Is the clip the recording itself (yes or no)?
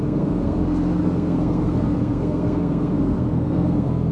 no